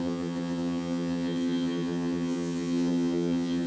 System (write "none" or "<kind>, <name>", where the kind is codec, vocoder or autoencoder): vocoder, HiFi-GAN